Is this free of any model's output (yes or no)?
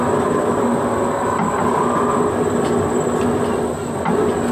yes